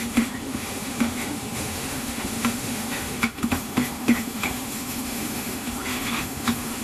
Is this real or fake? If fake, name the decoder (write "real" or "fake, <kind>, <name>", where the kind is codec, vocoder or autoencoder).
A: fake, autoencoder, DAC-VAE